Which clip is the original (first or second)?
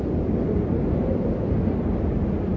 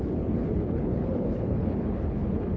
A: first